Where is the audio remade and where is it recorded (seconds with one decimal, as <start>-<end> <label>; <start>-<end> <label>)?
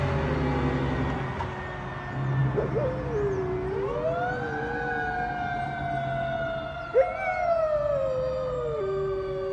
0.0-9.5 recorded